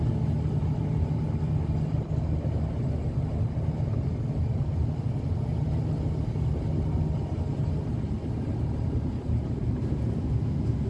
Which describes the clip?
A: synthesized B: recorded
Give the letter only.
B